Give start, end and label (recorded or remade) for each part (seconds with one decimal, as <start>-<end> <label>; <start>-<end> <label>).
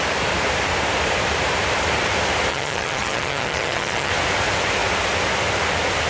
0.0-2.5 recorded; 2.5-4.1 remade; 4.1-6.1 recorded